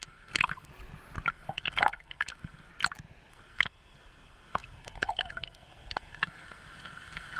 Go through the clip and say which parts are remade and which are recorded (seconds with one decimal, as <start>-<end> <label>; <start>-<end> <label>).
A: 0.0-0.7 remade; 0.7-1.3 recorded; 1.3-2.7 remade; 2.7-3.3 recorded; 3.3-7.4 remade